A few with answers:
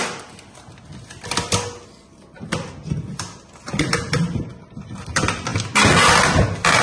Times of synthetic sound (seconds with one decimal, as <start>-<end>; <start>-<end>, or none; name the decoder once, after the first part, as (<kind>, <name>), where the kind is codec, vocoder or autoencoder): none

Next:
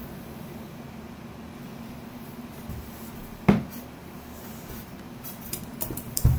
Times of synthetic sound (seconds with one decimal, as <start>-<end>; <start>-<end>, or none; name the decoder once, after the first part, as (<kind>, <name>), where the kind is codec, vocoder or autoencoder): 3.2-4.1 (vocoder, BigVGAN v2); 4.9-6.4

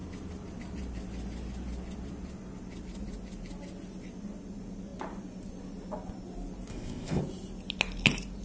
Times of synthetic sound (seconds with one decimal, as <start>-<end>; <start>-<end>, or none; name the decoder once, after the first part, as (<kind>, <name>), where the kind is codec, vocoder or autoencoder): 6.7-7.2 (codec, ZipCodec)

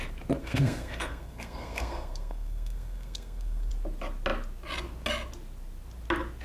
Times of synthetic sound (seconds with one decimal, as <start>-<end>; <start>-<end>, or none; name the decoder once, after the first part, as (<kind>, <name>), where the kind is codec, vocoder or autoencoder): 0.4-3.7 (codec, SNAC)

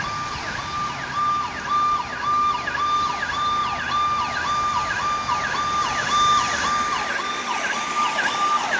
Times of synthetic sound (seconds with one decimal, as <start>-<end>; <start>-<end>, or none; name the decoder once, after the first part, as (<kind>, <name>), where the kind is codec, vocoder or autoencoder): none